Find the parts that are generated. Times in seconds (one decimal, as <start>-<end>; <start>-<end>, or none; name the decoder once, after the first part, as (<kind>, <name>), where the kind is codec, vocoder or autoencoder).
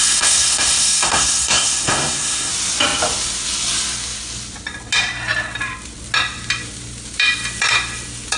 0.0-2.5 (codec, SNAC)